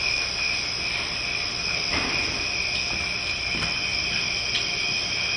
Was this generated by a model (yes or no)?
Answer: no